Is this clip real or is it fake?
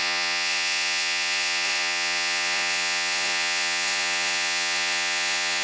fake